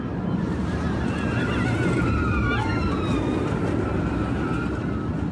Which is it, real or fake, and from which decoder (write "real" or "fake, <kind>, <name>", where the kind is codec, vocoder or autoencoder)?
real